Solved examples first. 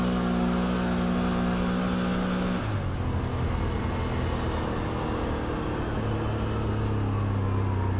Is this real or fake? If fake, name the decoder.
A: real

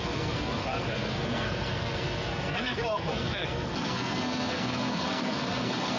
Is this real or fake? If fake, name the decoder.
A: fake, codec, SNAC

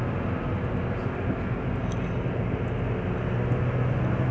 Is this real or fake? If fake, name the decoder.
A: real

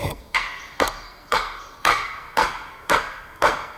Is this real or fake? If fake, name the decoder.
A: fake, codec, SNAC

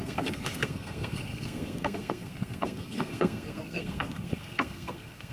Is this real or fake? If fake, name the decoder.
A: fake, codec, SNAC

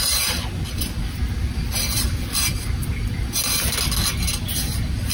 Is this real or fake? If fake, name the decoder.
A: real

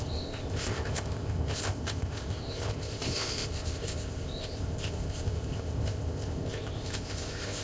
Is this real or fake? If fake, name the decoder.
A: fake, codec, ZipCodec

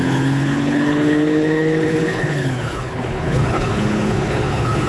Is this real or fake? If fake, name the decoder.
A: fake, codec, HILCodec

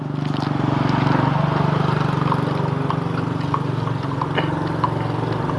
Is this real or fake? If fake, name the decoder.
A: real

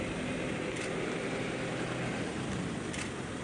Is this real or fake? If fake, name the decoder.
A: real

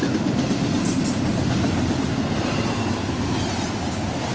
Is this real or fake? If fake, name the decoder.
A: real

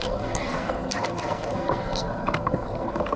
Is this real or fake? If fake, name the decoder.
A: fake, codec, SNAC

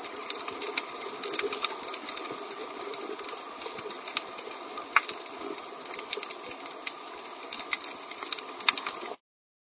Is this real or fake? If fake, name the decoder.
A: real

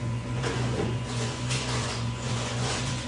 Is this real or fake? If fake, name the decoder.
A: fake, vocoder, Vocos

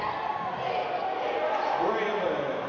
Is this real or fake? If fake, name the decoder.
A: real